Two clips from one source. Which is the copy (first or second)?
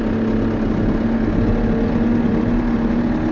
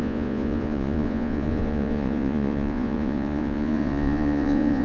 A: second